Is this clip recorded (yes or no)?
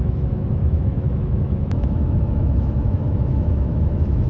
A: no